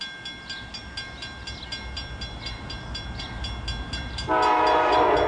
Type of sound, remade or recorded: recorded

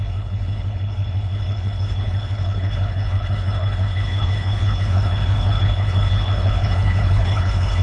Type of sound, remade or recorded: remade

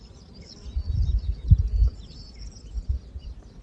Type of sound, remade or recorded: recorded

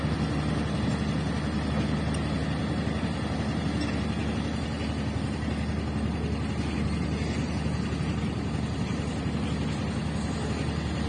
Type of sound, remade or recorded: recorded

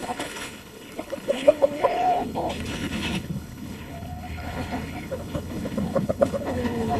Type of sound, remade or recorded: remade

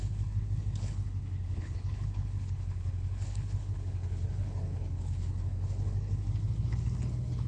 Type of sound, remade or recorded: remade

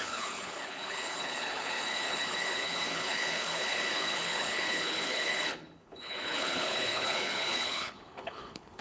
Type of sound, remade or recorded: remade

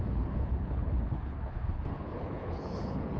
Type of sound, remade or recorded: remade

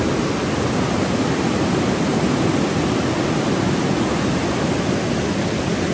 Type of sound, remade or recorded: recorded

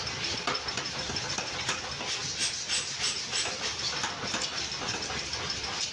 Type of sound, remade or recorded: recorded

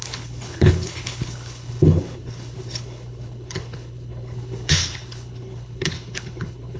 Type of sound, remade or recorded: remade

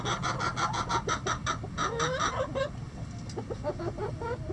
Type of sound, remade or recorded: recorded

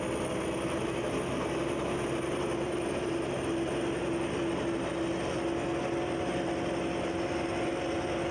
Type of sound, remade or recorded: recorded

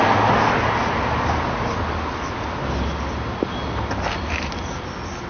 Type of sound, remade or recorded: recorded